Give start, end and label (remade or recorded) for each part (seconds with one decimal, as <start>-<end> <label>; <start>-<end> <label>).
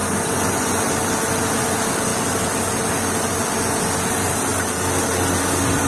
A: 0.0-0.8 remade; 0.8-5.9 recorded